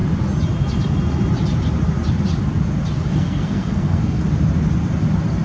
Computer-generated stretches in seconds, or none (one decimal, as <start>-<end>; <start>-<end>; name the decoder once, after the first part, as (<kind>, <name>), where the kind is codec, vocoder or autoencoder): 3.1-4.2 (codec, SNAC)